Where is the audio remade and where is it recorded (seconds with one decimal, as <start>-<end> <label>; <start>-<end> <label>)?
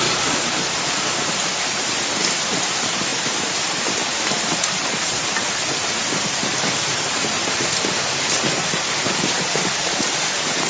0.0-10.7 remade